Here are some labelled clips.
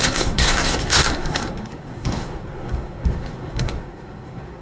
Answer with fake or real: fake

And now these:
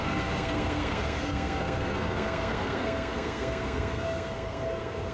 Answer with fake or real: fake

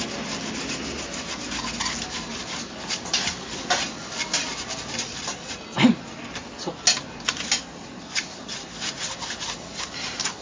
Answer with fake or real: real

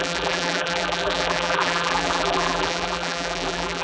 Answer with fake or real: fake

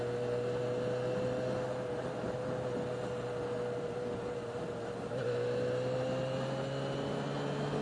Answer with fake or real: real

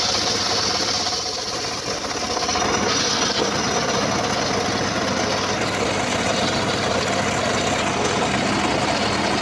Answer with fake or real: real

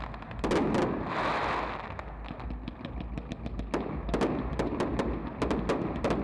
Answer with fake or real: real